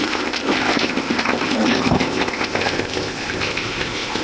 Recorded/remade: remade